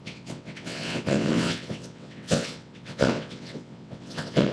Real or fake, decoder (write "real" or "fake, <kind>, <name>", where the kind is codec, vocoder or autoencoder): fake, vocoder, WaveNeXt